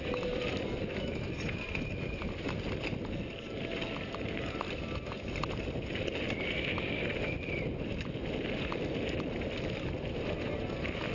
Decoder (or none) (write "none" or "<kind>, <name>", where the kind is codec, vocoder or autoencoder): none